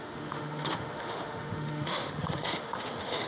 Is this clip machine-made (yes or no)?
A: yes